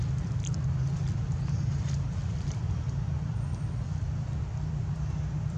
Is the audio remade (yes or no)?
yes